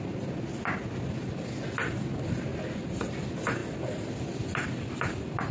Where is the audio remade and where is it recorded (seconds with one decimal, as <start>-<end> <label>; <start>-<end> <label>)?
0.0-5.5 recorded